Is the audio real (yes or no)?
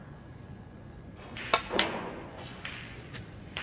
no